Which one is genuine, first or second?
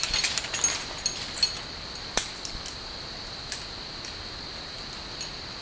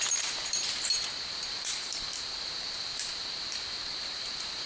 first